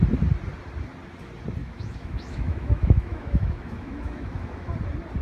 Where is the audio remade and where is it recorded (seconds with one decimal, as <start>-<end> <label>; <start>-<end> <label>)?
0.0-1.6 recorded; 1.6-4.7 remade; 4.7-5.2 recorded